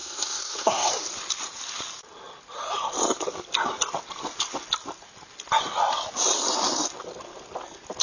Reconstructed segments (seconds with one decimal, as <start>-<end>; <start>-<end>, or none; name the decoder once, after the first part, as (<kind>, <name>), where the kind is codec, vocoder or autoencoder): 0.0-0.9 (codec, SNAC)

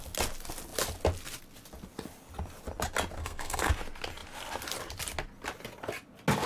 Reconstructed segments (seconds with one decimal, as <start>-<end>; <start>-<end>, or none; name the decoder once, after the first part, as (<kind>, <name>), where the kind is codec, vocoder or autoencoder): 3.2-3.7 (codec, SNAC)

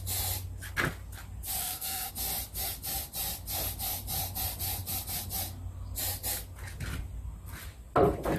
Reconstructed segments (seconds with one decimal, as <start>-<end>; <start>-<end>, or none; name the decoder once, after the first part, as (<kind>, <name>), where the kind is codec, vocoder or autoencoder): 1.6-2.1 (codec, SNAC)

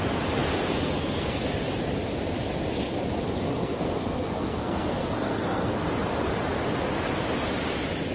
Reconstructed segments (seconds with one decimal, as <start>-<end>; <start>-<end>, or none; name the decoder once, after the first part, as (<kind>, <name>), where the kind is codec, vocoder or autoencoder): 0.8-1.4 (codec, SNAC); 3.6-5.9

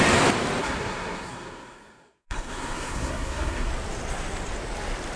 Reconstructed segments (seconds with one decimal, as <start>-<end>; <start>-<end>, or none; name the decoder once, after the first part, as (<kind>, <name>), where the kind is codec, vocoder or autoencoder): 0.6-3.7 (codec, SNAC)

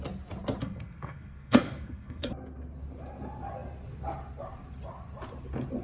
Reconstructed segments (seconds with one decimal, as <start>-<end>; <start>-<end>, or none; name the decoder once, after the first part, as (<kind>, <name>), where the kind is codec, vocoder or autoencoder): 0.6-2.3 (codec, SNAC)